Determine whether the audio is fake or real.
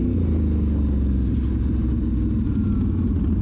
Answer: real